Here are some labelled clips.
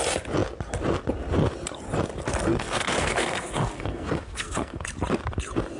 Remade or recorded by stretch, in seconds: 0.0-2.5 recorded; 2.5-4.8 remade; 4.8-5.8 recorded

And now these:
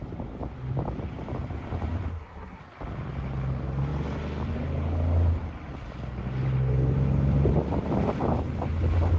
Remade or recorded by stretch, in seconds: 0.0-2.1 recorded; 2.1-2.6 remade; 2.6-9.2 recorded

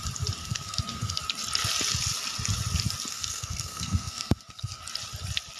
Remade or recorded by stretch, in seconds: 0.0-0.4 recorded; 0.4-1.2 remade; 1.2-3.1 recorded; 3.1-4.8 remade; 4.8-5.6 recorded